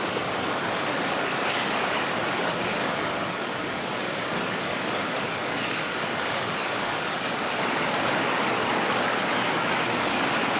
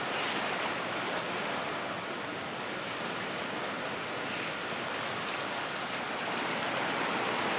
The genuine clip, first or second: second